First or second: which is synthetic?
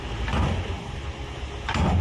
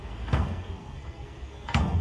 second